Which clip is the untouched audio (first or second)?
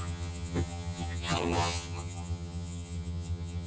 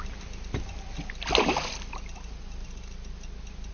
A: second